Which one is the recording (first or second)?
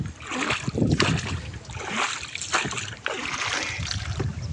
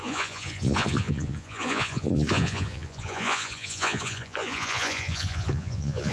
first